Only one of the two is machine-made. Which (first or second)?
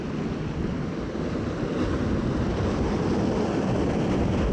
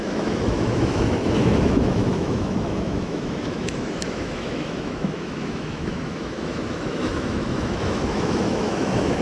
second